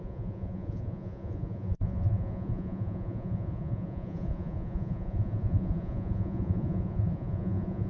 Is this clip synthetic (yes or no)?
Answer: yes